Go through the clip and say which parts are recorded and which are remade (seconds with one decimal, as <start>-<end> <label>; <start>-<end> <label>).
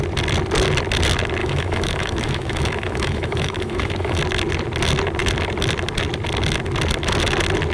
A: 0.0-1.4 recorded; 1.4-4.2 remade; 4.2-7.7 recorded